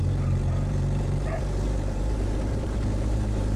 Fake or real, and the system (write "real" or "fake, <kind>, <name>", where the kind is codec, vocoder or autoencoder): fake, vocoder, BigVGAN v2